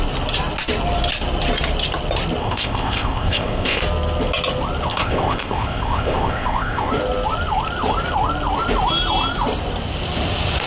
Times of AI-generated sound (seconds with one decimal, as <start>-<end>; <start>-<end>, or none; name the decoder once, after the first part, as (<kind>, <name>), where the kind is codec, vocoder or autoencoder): 2.4-3.8 (codec, ZipCodec); 4.9-6.9